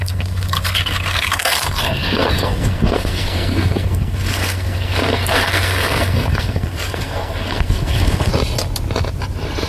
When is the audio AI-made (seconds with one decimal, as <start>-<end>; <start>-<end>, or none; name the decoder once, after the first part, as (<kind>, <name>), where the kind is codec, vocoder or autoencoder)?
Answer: 0.0-8.3 (codec, SNAC)